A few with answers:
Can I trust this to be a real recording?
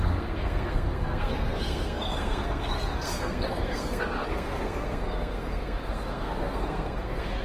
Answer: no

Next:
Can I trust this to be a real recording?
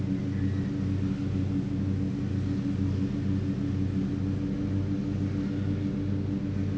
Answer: yes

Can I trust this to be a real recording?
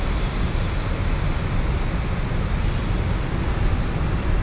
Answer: yes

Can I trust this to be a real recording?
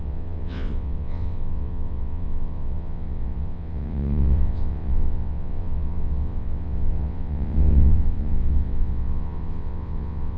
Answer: no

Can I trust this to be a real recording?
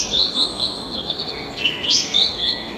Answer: no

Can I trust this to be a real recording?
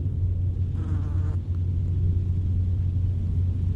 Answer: yes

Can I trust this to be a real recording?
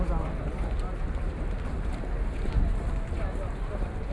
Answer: yes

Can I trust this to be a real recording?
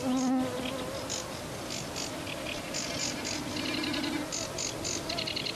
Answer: yes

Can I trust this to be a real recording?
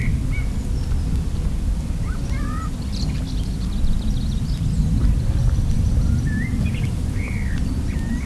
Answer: yes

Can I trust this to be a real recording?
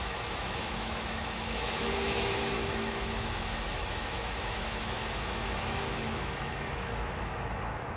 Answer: no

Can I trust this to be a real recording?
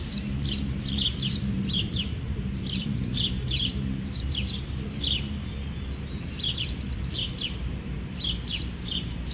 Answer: no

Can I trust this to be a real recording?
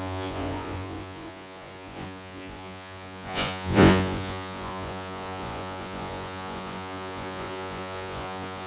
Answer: no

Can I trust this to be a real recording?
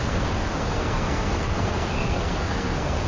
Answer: no